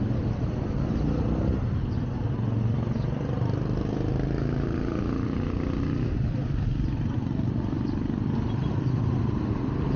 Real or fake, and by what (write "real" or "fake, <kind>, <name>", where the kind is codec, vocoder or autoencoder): real